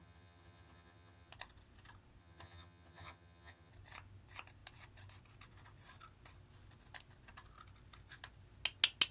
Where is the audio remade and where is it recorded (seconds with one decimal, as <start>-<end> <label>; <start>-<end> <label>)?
0.0-1.3 remade; 1.3-2.2 recorded; 2.2-3.7 remade; 3.7-9.1 recorded